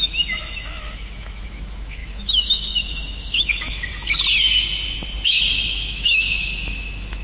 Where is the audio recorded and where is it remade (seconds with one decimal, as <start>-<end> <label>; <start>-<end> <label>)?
0.0-3.9 remade; 3.9-5.5 recorded; 5.5-7.2 remade